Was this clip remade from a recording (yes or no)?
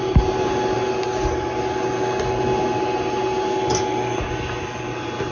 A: no